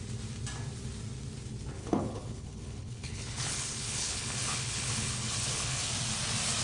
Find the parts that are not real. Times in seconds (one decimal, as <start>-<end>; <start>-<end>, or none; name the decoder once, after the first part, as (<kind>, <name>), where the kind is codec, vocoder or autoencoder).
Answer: 1.8-5.8 (codec, HILCodec)